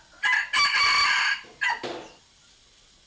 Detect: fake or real real